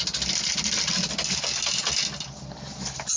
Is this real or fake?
real